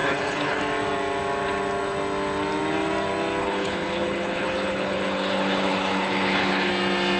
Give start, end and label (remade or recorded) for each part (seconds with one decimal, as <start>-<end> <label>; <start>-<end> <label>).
0.0-0.6 remade; 0.6-3.4 recorded; 3.4-6.7 remade; 6.7-7.2 recorded